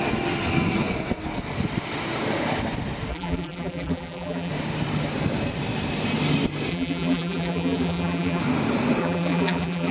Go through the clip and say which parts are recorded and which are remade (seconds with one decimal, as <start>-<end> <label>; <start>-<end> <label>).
0.0-3.1 recorded; 3.1-4.5 remade; 4.5-6.7 recorded; 6.7-8.4 remade; 8.4-9.0 recorded; 9.0-9.9 remade

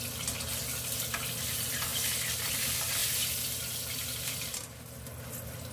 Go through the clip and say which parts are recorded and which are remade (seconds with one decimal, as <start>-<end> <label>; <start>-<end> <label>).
0.0-5.7 recorded

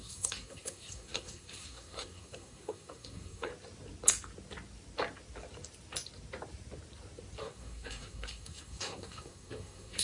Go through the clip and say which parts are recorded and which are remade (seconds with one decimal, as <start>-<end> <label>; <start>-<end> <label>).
0.0-3.5 remade; 3.5-7.4 recorded; 7.4-10.0 remade

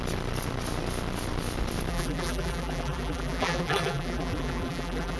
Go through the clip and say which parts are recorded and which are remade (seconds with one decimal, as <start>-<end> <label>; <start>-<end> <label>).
0.0-1.9 recorded; 1.9-5.2 remade

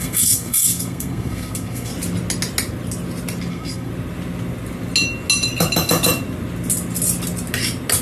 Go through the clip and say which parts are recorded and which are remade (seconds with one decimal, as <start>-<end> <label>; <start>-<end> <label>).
0.0-1.9 remade; 1.9-3.5 recorded; 3.5-3.9 remade; 3.9-8.0 recorded

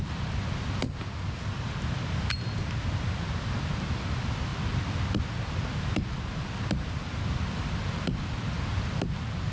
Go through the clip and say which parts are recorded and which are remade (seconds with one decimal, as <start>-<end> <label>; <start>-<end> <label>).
0.0-9.5 recorded

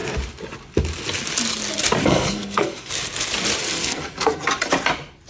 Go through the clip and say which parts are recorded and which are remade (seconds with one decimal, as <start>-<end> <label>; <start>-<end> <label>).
0.0-2.0 recorded; 2.0-2.9 remade; 2.9-3.6 recorded; 3.6-4.5 remade; 4.5-5.3 recorded

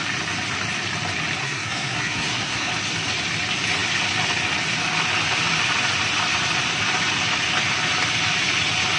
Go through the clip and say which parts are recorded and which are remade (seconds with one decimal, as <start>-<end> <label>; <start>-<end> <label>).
0.0-1.4 recorded; 1.4-2.7 remade; 2.7-9.0 recorded